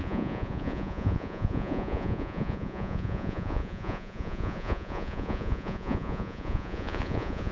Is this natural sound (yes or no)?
no